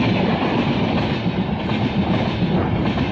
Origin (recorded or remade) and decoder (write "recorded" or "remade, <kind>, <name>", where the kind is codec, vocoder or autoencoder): recorded